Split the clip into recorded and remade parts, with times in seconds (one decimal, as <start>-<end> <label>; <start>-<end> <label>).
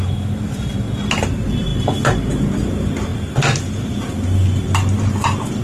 0.0-5.6 recorded